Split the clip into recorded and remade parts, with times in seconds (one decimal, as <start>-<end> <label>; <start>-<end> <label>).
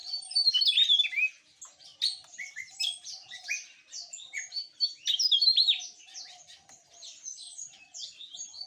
0.0-0.6 remade; 0.6-8.7 recorded